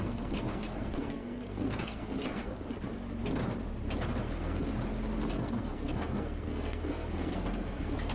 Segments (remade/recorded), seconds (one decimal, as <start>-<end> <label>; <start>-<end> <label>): 0.0-2.5 remade; 2.5-4.2 recorded; 4.2-4.7 remade; 4.7-5.3 recorded; 5.3-8.1 remade